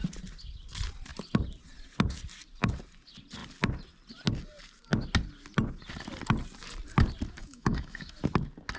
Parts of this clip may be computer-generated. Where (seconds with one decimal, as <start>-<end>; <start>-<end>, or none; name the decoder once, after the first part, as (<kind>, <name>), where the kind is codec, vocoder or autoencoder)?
7.4-8.1 (autoencoder, DAC-VAE)